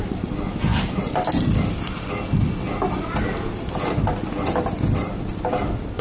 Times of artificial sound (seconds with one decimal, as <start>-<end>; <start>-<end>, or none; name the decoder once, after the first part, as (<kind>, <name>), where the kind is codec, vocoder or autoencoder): none